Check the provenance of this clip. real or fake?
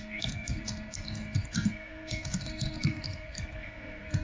fake